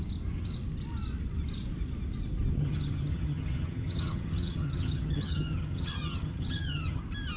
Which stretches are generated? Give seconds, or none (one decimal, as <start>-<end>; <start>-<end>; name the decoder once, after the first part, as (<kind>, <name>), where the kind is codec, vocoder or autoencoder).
2.6-7.0 (vocoder, HiFi-GAN)

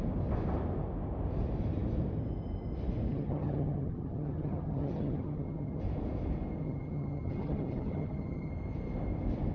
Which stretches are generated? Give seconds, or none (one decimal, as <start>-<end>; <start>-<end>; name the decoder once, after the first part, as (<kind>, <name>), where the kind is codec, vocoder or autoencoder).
3.1-5.8 (vocoder, HiFi-GAN); 6.6-8.5

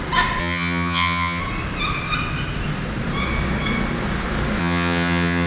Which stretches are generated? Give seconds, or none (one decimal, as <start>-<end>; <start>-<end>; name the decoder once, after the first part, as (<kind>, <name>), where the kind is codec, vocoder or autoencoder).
0.4-1.4 (vocoder, HiFi-GAN); 4.6-5.5

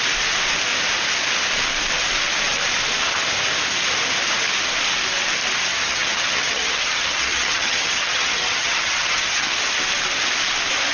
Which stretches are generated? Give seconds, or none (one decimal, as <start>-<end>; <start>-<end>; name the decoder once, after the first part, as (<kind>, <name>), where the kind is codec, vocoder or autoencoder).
5.7-9.6 (vocoder, HiFi-GAN)

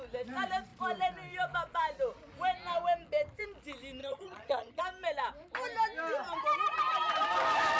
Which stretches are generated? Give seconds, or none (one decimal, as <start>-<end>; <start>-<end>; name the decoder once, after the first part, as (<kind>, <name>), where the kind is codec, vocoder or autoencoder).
4.0-4.8 (vocoder, HiFi-GAN)